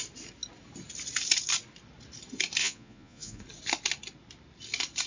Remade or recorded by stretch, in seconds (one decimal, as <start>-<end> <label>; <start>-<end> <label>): 0.0-2.6 recorded; 2.6-3.4 remade; 3.4-5.1 recorded